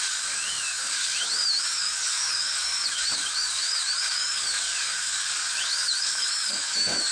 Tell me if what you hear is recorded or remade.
remade